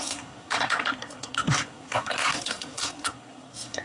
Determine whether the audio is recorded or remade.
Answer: remade